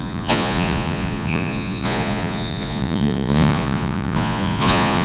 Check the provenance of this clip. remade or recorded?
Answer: remade